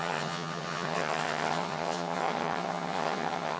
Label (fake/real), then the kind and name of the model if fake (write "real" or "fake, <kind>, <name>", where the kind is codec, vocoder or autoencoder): fake, vocoder, HiFi-GAN